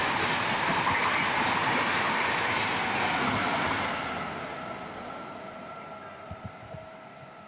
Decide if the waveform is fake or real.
real